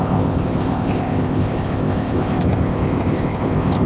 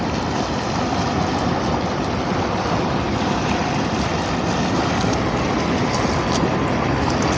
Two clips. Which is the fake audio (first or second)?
first